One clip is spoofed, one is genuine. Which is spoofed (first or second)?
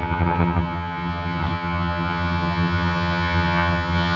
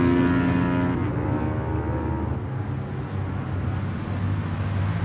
first